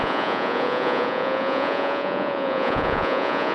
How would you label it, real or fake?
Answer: fake